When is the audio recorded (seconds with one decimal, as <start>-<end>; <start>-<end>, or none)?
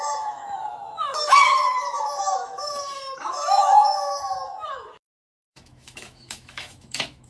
none